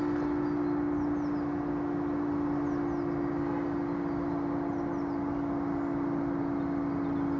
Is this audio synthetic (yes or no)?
no